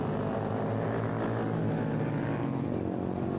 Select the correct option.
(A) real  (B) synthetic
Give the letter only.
A